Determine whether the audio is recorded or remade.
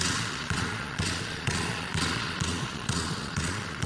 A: remade